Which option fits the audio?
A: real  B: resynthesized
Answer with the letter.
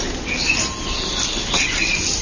A